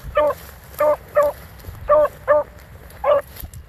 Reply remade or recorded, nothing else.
recorded